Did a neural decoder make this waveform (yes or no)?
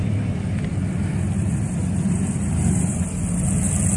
no